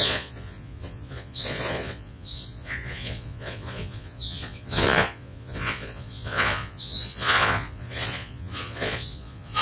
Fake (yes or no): yes